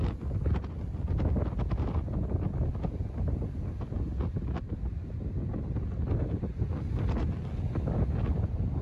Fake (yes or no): no